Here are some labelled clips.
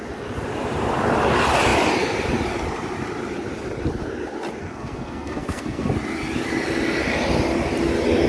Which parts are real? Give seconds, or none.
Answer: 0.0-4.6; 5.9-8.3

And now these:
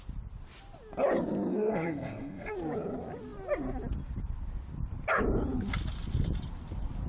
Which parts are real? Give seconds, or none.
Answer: 0.0-1.5; 2.5-7.1

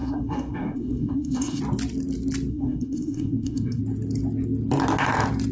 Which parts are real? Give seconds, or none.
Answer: 1.6-2.5; 3.8-5.5